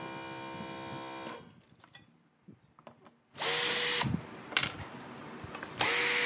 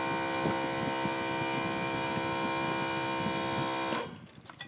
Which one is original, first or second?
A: first